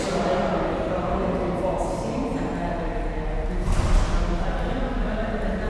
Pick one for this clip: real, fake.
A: real